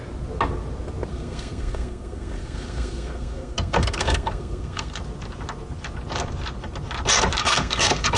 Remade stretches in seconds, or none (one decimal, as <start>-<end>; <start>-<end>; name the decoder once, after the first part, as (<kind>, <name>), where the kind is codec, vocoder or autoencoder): 1.1-5.0 (codec, SNAC); 7.4-8.2